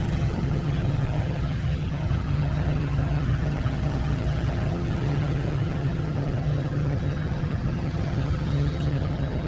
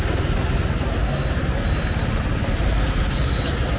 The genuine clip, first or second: second